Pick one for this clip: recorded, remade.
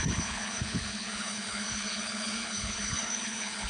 remade